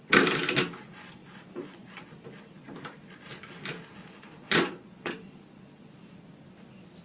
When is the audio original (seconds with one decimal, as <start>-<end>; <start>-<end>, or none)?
0.0-1.2; 2.0-4.0; 5.9-7.0